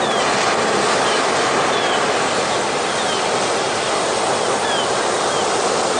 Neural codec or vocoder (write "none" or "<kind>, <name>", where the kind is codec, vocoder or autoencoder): none